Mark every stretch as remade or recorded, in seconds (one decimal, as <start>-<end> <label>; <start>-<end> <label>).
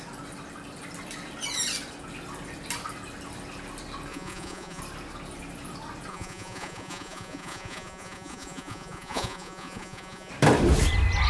0.0-4.1 recorded; 4.1-4.8 remade; 4.8-6.1 recorded; 6.1-10.3 remade; 10.3-11.3 recorded